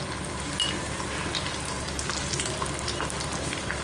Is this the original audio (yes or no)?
yes